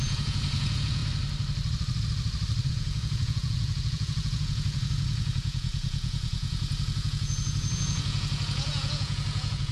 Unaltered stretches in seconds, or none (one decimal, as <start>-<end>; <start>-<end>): 1.0-2.7